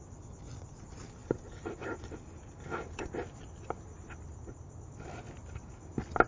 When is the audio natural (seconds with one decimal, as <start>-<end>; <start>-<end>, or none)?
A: 0.0-6.3